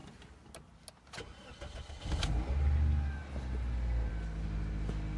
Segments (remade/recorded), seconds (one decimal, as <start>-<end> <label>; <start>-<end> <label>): 0.0-5.2 recorded